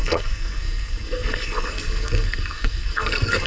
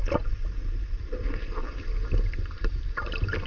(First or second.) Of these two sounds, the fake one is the first